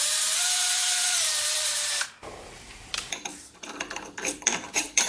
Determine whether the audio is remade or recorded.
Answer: remade